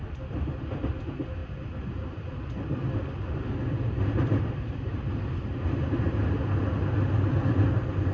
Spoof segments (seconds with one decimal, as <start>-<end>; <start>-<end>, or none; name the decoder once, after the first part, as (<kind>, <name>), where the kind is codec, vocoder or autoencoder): 1.4-5.1 (vocoder, BigVGAN v2); 6.6-7.5

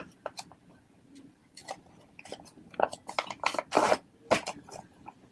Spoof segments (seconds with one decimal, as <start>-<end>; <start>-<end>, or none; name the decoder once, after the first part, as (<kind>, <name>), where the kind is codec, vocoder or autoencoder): 1.4-4.6 (vocoder, BigVGAN v2)